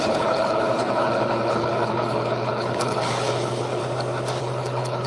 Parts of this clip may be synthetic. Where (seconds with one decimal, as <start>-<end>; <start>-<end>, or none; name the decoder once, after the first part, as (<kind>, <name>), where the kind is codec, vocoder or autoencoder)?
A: 0.0-3.8 (codec, HILCodec); 4.4-5.1